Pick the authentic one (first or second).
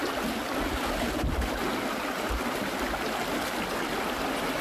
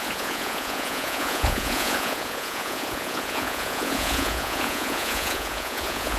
first